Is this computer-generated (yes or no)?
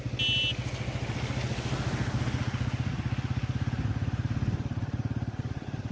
no